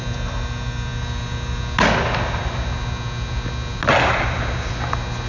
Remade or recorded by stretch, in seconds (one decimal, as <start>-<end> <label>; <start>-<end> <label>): 0.0-5.3 recorded